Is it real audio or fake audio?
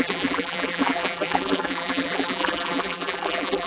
fake